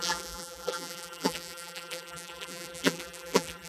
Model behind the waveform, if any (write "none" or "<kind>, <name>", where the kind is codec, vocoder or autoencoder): vocoder, BigVGAN v2